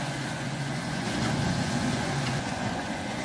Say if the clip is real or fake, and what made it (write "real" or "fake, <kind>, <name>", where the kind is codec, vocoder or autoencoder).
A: fake, vocoder, Vocos